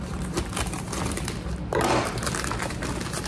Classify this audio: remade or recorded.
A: recorded